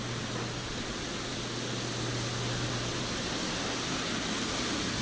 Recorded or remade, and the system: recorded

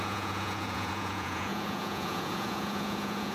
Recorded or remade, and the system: remade, vocoder, Vocos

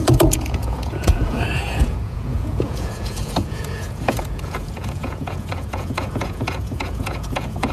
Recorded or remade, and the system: remade, vocoder, Vocos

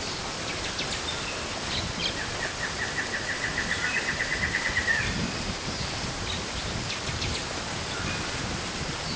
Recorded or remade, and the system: recorded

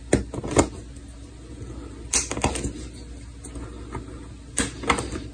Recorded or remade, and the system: recorded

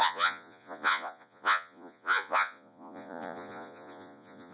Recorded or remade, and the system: remade, vocoder, Vocos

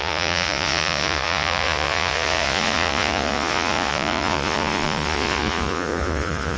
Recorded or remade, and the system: remade, vocoder, Vocos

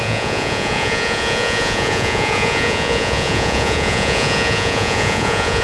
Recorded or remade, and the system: remade, vocoder, Vocos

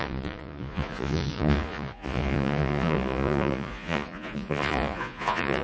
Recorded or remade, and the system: remade, vocoder, Vocos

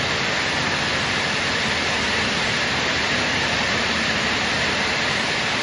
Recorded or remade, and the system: recorded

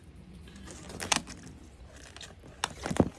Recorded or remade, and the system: recorded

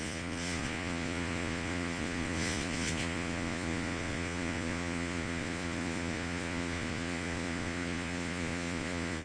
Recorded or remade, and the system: remade, vocoder, Vocos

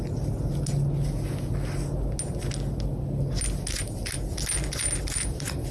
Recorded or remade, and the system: recorded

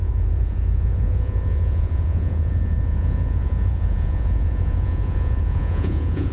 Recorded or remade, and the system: remade, vocoder, Vocos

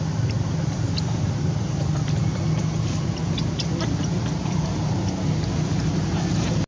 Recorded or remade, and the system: recorded